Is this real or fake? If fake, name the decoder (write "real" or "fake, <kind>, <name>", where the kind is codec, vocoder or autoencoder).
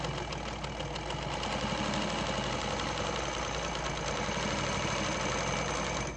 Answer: real